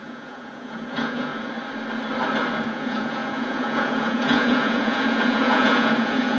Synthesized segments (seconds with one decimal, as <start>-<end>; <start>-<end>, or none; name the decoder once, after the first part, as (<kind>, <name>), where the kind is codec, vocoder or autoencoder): 0.0-1.3 (vocoder, Vocos); 2.5-6.4